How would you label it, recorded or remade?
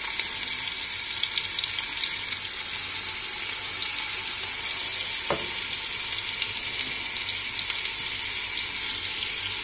recorded